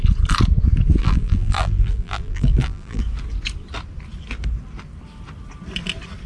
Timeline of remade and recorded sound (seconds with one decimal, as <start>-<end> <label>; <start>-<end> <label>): 0.0-1.0 recorded; 1.0-3.0 remade; 3.0-6.3 recorded